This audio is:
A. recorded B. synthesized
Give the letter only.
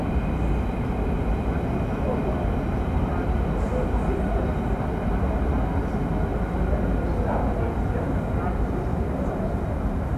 A